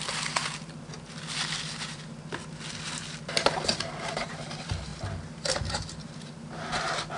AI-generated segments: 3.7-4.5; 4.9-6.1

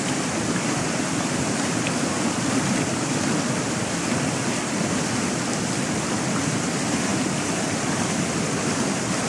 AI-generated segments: none